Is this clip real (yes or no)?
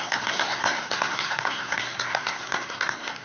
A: no